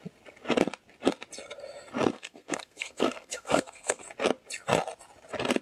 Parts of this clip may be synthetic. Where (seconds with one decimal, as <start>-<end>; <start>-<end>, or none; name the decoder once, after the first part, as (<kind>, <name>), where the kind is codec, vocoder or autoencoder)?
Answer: 2.1-4.0 (codec, SNAC)